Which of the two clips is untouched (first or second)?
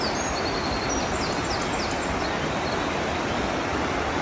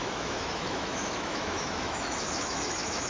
first